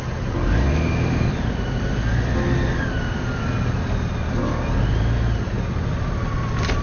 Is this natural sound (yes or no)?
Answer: yes